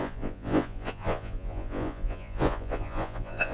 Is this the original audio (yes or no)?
no